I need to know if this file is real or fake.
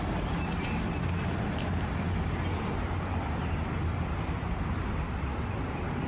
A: real